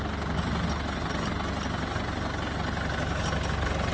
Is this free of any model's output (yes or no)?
yes